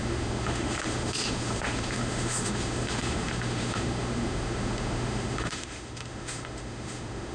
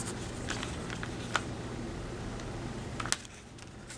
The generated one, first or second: first